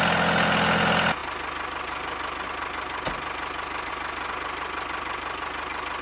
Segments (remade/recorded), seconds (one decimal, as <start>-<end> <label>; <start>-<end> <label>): 0.0-6.0 recorded